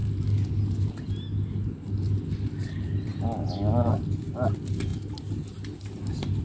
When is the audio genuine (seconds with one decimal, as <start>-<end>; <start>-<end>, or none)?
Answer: 0.0-6.4